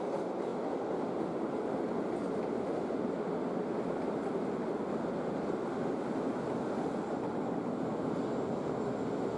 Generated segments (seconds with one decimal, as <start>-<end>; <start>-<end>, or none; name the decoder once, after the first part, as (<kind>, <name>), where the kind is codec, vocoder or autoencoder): none